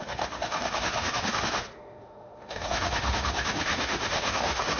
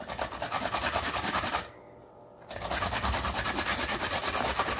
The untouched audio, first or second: second